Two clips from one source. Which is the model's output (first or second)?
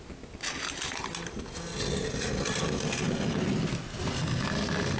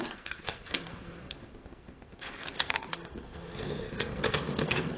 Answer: second